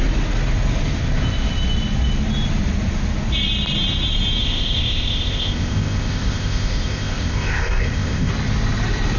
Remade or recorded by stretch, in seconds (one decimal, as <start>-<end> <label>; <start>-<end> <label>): 0.0-4.4 recorded; 4.4-8.3 remade; 8.3-9.2 recorded